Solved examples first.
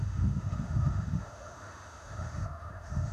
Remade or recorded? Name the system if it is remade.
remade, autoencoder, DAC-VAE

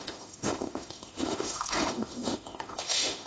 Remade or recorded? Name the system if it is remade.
remade, autoencoder, DAC-VAE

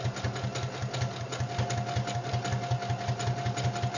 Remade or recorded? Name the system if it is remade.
recorded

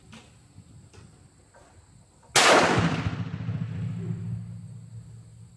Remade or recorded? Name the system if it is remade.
recorded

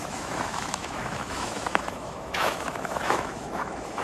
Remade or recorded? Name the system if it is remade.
remade, autoencoder, DAC-VAE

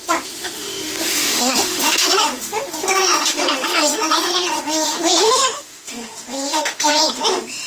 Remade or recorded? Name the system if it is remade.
remade, autoencoder, DAC-VAE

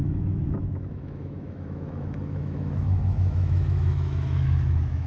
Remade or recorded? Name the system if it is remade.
remade, autoencoder, DAC-VAE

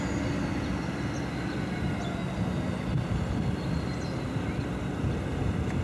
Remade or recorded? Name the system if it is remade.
recorded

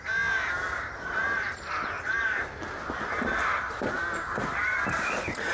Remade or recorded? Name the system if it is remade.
recorded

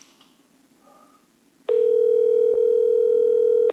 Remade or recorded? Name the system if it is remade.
recorded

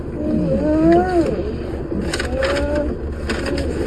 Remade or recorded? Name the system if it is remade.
recorded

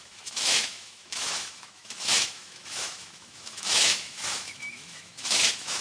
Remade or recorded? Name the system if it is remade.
remade, autoencoder, DAC-VAE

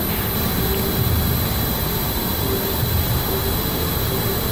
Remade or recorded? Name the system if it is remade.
recorded